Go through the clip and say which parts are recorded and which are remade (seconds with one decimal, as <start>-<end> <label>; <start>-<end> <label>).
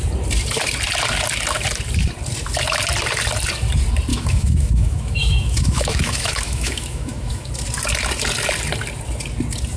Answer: 0.0-4.1 recorded; 4.1-7.5 remade; 7.5-9.8 recorded